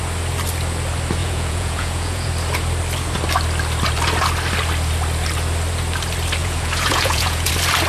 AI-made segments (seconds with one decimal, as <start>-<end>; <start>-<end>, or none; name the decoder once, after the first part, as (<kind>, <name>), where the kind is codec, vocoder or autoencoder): 1.2-2.3 (vocoder, Vocos); 6.4-7.5